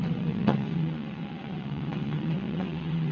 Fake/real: fake